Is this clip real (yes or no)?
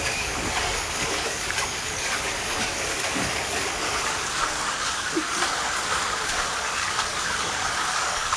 no